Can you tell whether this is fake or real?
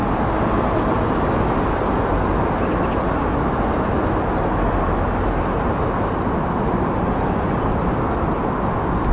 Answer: real